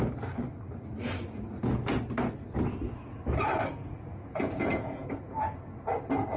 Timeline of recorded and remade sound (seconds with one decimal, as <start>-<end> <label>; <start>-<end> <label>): 0.0-3.7 recorded; 3.7-5.6 remade; 5.6-6.4 recorded